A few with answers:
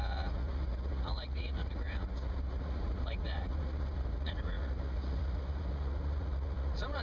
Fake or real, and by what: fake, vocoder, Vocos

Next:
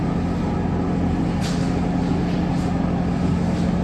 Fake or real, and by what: real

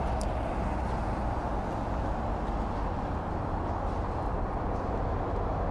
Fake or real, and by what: real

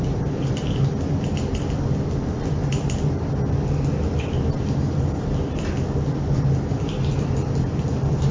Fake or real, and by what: real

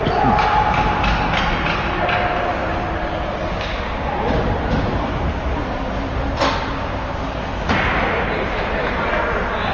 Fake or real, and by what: real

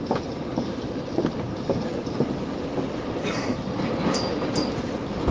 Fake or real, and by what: real